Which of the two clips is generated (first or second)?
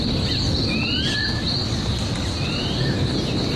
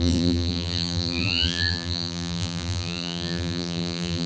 second